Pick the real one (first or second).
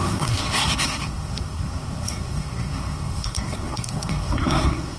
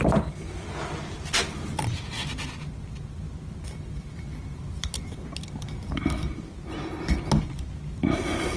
second